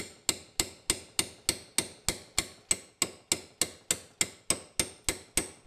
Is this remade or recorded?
recorded